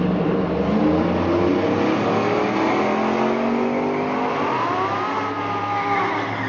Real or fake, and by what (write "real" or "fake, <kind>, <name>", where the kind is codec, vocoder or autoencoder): real